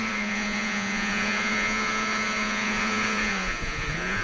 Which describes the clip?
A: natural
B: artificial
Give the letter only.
B